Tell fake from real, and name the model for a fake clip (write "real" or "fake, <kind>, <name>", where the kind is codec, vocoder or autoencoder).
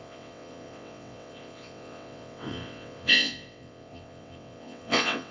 fake, vocoder, WaveNeXt